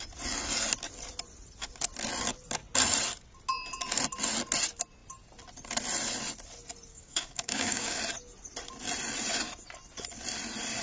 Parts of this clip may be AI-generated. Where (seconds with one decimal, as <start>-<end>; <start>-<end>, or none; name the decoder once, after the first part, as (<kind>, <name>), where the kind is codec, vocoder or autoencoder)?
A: 6.9-8.0 (codec, DAC)